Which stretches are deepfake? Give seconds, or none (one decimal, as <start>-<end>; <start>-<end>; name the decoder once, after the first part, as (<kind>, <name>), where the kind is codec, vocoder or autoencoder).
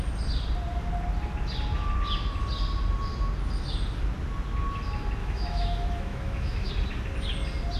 5.2-6.7 (autoencoder, DAC-VAE)